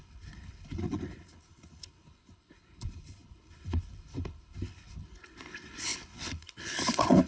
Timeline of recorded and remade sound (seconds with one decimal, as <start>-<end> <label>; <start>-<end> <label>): 0.0-7.3 remade